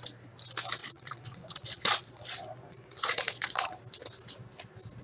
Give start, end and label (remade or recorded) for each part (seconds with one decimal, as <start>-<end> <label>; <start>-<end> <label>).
0.0-0.8 recorded; 0.8-3.8 remade; 3.8-5.0 recorded